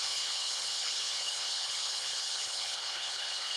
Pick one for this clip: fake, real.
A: fake